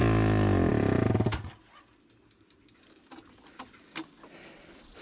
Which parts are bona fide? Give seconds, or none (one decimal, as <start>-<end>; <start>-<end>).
0.0-0.7